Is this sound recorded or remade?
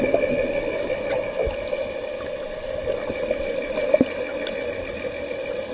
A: recorded